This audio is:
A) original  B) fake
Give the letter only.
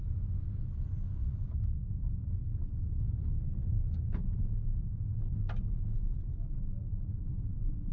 A